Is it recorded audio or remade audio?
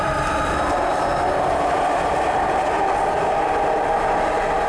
remade